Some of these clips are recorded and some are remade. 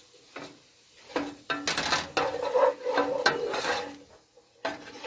recorded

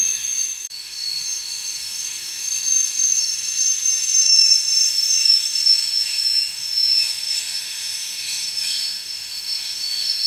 remade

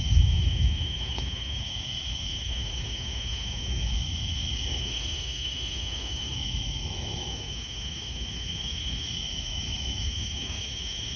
remade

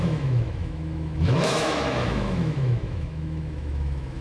remade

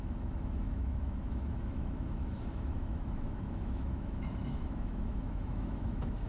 remade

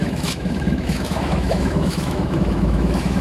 remade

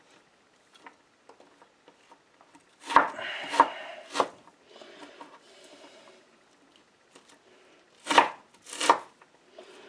recorded